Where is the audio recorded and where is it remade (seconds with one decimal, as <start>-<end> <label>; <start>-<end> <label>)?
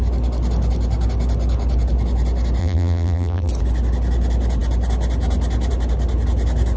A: 0.0-2.6 recorded; 2.6-3.5 remade; 3.5-6.8 recorded